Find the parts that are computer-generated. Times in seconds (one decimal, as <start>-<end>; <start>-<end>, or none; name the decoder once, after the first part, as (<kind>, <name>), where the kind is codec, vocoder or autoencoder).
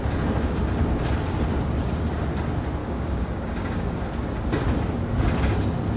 2.8-4.0 (codec, DAC)